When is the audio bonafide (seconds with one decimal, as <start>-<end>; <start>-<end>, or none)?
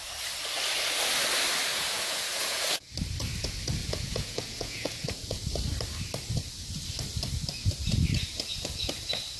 0.0-1.7; 2.9-3.8; 5.4-8.3; 8.9-9.4